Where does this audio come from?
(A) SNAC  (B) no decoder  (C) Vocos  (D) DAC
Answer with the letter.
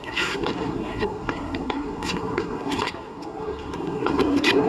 A